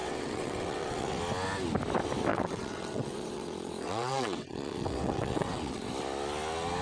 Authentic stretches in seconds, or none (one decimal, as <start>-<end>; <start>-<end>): 1.2-2.3; 5.8-6.8